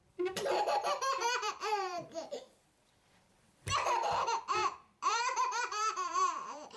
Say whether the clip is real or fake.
fake